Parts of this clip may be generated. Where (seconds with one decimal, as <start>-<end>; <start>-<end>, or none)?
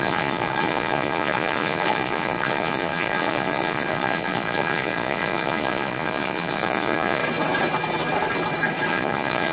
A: 0.0-7.2; 8.9-9.5